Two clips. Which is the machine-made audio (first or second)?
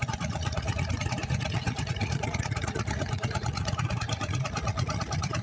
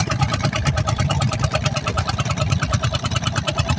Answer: first